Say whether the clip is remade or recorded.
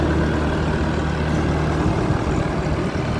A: recorded